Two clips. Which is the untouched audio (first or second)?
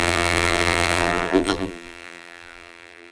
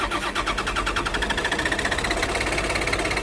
second